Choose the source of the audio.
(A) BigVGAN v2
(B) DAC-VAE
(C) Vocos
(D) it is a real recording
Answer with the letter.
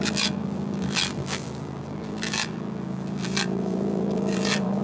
A